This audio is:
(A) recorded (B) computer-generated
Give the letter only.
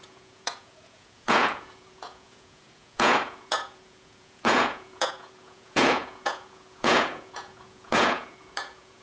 B